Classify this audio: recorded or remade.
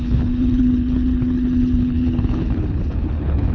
remade